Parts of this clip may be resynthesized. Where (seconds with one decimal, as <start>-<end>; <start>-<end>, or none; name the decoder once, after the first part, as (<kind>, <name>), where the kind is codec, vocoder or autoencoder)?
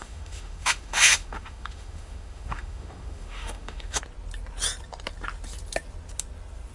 0.0-4.0 (autoencoder, DAC-VAE)